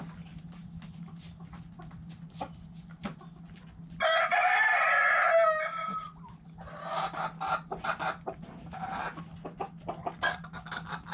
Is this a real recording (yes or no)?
yes